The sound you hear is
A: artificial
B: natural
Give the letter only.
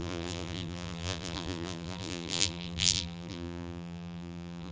A